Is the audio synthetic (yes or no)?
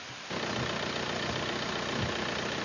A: no